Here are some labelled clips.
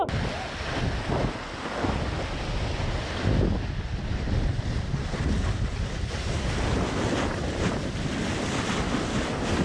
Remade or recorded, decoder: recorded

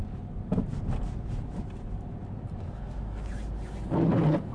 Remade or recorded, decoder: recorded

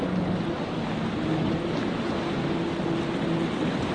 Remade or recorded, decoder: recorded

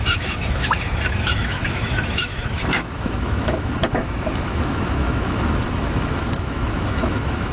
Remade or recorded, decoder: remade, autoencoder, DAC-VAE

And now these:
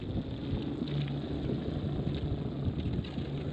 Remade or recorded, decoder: recorded